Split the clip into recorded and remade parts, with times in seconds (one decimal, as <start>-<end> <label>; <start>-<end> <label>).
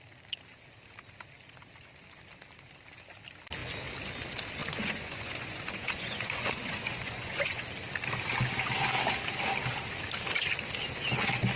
0.0-4.6 recorded; 4.6-7.6 remade; 7.6-11.6 recorded